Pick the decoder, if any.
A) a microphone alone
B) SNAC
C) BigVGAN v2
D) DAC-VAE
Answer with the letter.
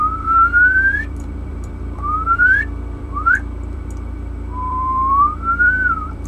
C